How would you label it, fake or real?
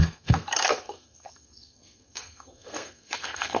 fake